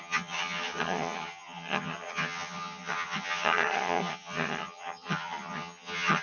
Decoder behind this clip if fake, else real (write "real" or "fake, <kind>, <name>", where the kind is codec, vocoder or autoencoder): fake, vocoder, HiFi-GAN